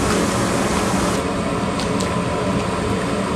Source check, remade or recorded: recorded